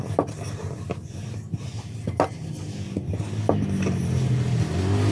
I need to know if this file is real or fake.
real